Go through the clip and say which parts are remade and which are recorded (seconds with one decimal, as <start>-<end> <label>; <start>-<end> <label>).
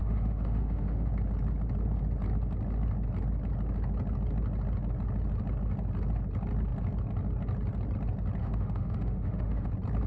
0.0-1.1 remade; 1.1-8.4 recorded; 8.4-9.7 remade; 9.7-10.1 recorded